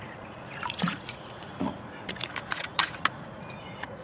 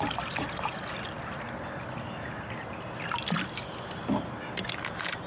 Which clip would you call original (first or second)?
second